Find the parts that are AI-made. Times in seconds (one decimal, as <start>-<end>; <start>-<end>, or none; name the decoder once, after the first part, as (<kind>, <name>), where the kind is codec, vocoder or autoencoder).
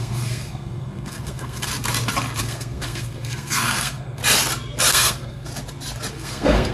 0.0-1.7 (codec, SNAC); 2.4-4.2; 4.9-5.5; 6.1-6.7